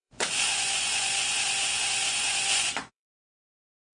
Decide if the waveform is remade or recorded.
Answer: remade